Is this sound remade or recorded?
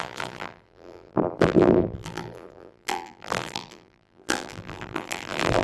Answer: remade